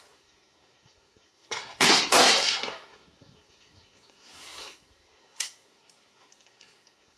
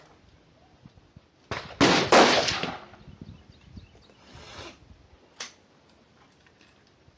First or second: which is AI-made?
first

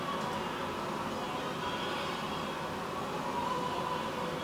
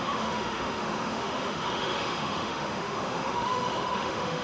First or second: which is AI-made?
second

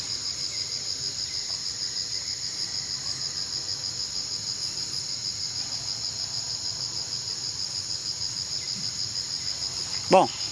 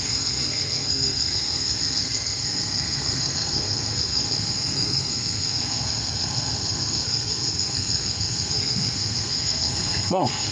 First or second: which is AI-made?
second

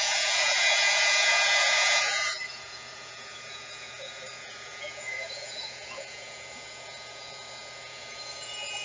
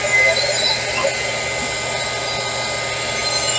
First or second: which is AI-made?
first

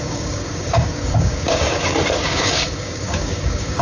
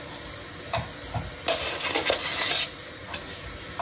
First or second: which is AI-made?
first